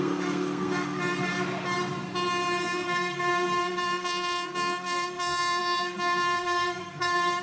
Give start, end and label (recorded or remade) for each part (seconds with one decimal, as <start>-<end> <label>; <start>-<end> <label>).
0.0-1.3 remade; 1.3-2.6 recorded; 2.6-7.4 remade